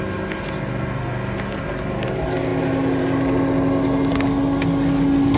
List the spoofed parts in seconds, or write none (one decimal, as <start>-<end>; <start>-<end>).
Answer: none